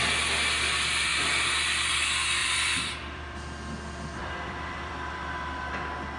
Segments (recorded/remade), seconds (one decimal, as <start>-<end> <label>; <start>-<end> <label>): 0.0-2.4 recorded; 2.4-3.4 remade; 3.4-4.2 recorded; 4.2-5.7 remade; 5.7-6.2 recorded